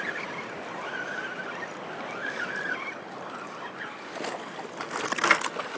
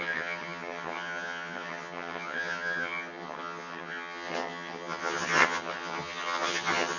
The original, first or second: first